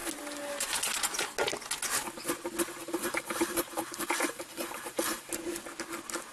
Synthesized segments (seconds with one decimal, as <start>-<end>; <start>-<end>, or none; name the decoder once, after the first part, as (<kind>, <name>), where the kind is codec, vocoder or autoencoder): 2.8-5.3 (vocoder, BigVGAN v2)